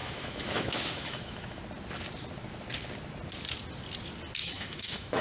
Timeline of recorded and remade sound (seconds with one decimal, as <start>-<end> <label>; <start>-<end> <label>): 0.0-1.6 remade; 1.6-4.4 recorded; 4.4-5.2 remade